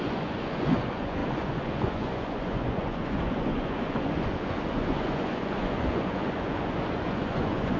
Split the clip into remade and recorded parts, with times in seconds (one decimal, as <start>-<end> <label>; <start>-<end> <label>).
0.0-7.8 remade